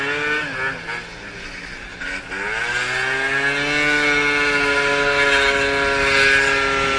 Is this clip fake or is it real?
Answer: real